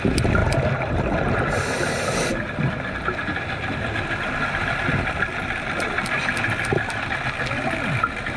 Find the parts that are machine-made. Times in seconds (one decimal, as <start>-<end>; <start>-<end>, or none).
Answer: none